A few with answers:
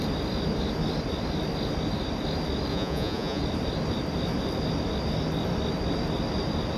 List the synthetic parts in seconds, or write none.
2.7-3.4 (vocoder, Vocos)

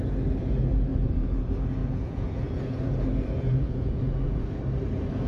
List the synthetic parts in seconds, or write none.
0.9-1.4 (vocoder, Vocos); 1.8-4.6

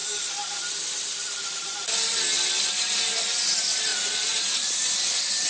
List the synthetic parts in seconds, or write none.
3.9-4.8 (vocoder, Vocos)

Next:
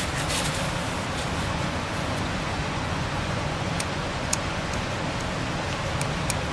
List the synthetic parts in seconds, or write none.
1.4-5.1 (vocoder, Vocos)

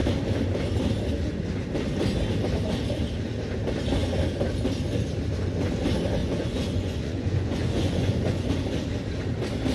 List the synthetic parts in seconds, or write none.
6.2-8.5 (vocoder, Vocos)

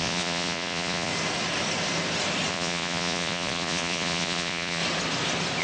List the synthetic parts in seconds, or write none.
0.0-1.1 (vocoder, Vocos); 2.5-4.8

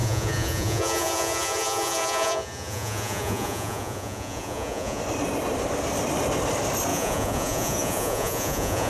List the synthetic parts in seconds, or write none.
0.0-5.0 (vocoder, Vocos); 6.9-8.9

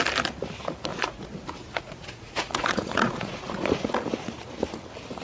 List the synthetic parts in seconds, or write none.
0.9-4.0 (vocoder, Vocos)